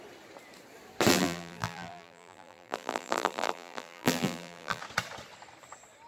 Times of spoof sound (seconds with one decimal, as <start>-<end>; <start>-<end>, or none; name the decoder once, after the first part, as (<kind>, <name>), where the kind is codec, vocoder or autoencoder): 1.1-4.8 (vocoder, BigVGAN v2)

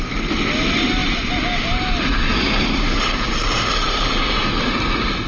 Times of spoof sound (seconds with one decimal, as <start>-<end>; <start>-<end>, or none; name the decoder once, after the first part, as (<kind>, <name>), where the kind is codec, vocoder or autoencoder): 1.0-2.8 (vocoder, BigVGAN v2); 3.8-4.4

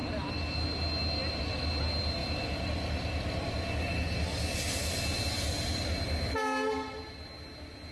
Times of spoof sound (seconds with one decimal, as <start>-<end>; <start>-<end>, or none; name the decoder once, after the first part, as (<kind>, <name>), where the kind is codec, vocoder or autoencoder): none